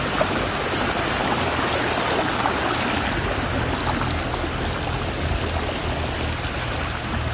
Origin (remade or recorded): recorded